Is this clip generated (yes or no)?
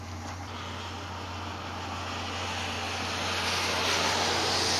no